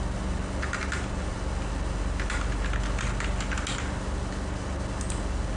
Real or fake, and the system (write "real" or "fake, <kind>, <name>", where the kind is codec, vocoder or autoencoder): real